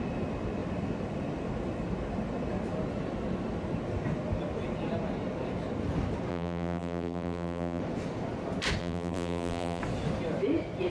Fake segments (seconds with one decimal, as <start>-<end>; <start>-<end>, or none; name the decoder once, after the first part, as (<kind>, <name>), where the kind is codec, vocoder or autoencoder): 6.3-7.8 (vocoder, BigVGAN v2); 8.8-9.8